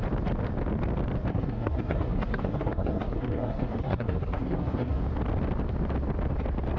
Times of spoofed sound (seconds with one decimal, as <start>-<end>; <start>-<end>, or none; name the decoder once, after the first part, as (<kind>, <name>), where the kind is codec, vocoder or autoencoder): 1.3-5.0 (codec, SNAC)